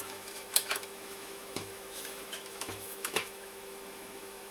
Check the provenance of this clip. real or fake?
fake